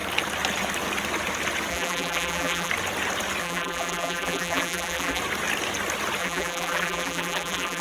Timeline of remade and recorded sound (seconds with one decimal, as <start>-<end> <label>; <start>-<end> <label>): 0.0-1.7 recorded; 1.7-2.7 remade; 2.7-3.4 recorded; 3.4-5.2 remade; 5.2-6.2 recorded; 6.2-7.8 remade